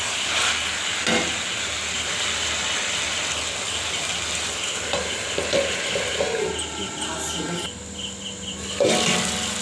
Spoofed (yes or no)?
no